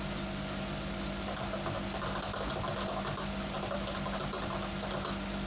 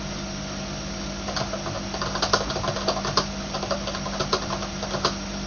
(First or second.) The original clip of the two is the first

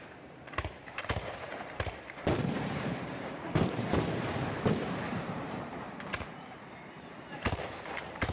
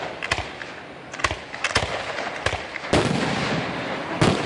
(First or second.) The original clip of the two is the second